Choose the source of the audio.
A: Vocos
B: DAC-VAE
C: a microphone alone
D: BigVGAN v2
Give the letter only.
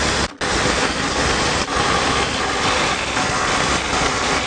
C